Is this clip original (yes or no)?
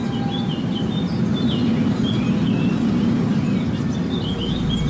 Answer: yes